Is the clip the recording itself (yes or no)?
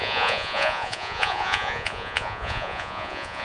no